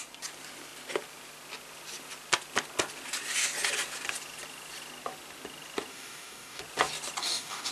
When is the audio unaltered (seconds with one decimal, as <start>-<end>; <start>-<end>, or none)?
0.0-5.9; 6.6-7.2